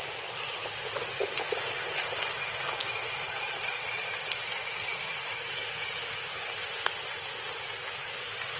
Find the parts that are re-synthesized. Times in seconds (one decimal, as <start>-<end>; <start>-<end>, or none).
3.0-4.0